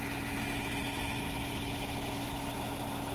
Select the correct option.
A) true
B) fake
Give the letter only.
A